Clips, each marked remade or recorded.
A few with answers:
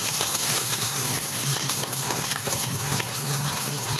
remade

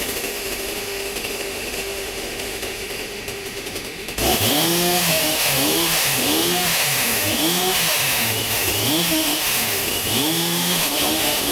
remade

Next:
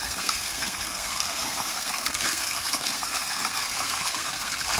remade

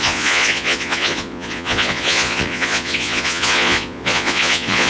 remade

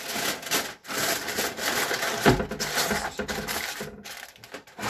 recorded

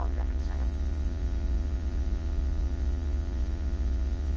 remade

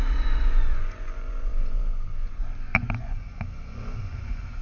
remade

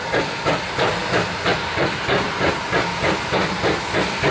recorded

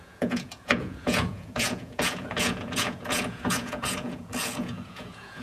remade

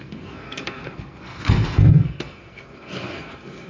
remade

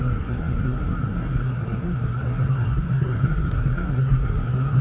remade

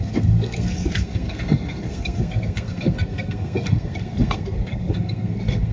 remade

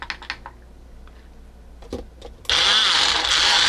recorded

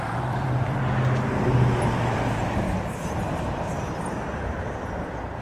remade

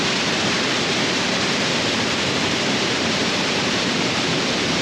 remade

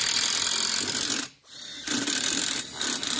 recorded